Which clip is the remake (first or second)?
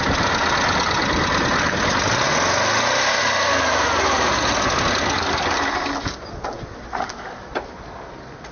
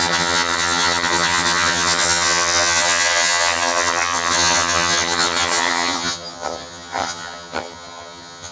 second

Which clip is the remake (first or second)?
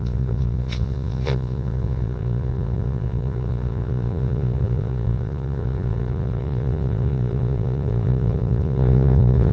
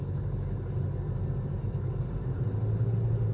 first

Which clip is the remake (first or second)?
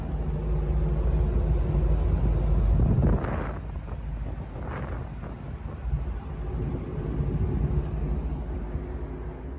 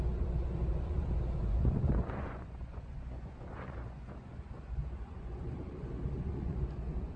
second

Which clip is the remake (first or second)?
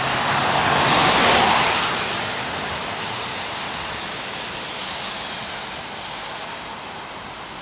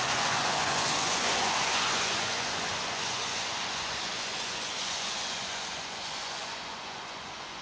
second